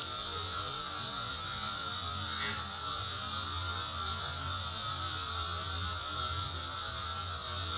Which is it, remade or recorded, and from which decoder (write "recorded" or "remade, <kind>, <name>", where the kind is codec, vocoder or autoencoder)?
recorded